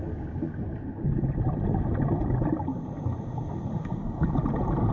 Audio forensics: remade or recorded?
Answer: recorded